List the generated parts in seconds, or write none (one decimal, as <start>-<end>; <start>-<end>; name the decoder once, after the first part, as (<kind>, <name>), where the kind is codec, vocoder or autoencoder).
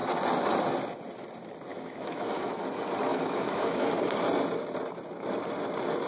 1.7-2.6 (autoencoder, DAC-VAE); 3.1-3.9